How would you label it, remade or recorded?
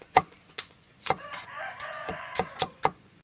remade